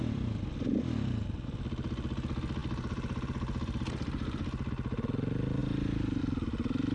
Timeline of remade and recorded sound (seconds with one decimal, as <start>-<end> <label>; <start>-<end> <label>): 0.0-2.6 recorded; 2.6-4.7 remade; 4.7-5.6 recorded; 5.6-6.2 remade; 6.2-6.9 recorded